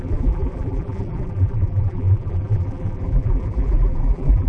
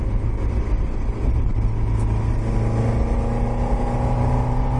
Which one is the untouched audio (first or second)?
second